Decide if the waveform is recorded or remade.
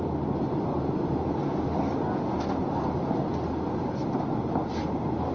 recorded